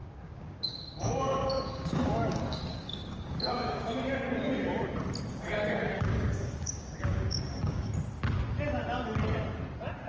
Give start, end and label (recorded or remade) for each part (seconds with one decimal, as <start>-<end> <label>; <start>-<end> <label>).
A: 0.0-4.5 remade; 4.5-5.3 recorded; 5.3-7.9 remade; 7.9-10.1 recorded